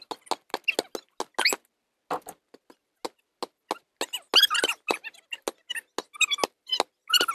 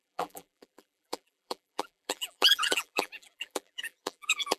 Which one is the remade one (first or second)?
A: second